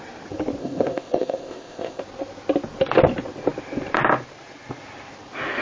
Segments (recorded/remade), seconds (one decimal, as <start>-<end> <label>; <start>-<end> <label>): 0.0-0.6 recorded; 0.6-2.0 remade; 2.0-5.6 recorded